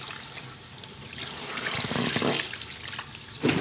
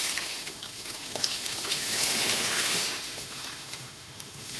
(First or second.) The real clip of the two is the first